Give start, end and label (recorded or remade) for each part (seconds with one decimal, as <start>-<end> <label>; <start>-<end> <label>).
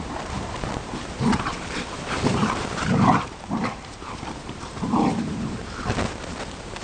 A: 0.0-5.6 remade; 5.6-6.3 recorded; 6.3-6.8 remade